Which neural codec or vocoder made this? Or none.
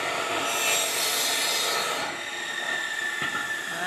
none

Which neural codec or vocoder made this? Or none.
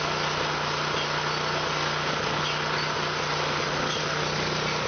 none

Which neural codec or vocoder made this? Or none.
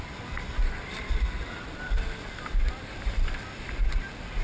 none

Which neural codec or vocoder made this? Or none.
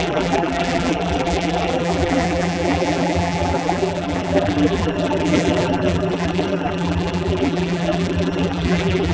vocoder, BigVGAN v2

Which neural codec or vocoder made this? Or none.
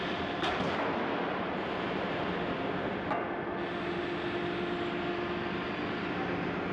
none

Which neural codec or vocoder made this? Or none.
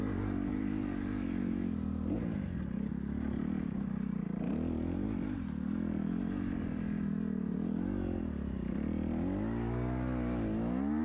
none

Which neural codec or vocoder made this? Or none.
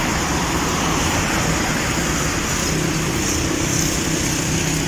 none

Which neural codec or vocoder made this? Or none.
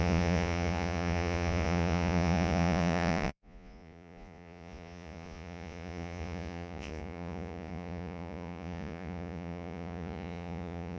vocoder, Vocos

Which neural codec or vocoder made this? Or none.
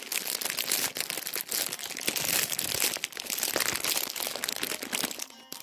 none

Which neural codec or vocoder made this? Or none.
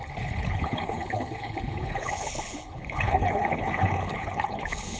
codec, HILCodec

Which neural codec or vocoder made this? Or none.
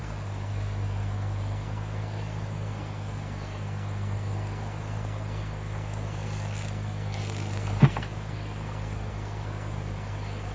codec, SNAC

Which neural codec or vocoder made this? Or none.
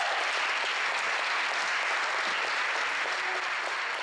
none